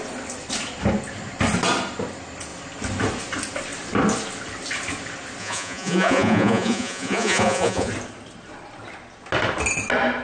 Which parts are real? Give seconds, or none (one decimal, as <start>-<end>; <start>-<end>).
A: 0.0-5.4; 7.9-10.2